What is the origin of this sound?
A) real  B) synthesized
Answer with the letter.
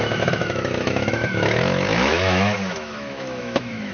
B